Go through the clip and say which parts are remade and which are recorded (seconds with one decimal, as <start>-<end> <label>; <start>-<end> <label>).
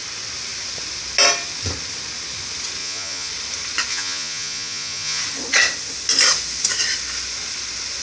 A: 0.0-2.8 recorded; 2.8-3.3 remade; 3.3-3.9 recorded; 3.9-5.2 remade; 5.2-8.0 recorded